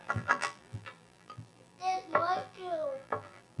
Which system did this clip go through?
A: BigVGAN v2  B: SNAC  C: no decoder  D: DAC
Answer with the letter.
A